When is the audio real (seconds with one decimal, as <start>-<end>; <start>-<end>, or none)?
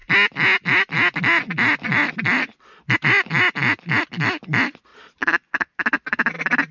0.0-4.9; 5.8-6.7